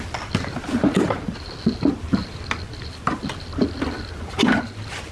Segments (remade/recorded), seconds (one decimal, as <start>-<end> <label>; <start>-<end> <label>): 0.0-0.8 recorded; 0.8-1.6 remade; 1.6-2.2 recorded; 2.2-3.6 remade; 3.6-5.1 recorded